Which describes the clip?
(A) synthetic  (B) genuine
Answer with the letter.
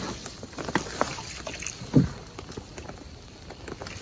B